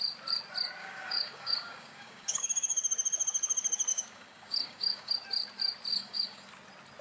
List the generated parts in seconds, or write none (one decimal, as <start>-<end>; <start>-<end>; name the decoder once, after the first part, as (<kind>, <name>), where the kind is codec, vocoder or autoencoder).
0.8-2.4 (codec, DAC); 3.9-5.1; 5.9-6.5